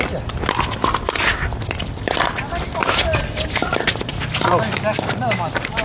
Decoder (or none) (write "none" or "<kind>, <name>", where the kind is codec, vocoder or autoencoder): none